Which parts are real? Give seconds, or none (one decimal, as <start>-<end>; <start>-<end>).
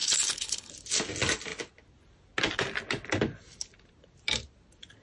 0.7-5.0